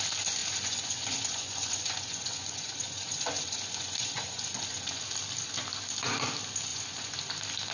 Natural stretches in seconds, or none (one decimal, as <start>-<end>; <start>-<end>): 0.0-0.4; 5.0-6.7; 7.2-7.7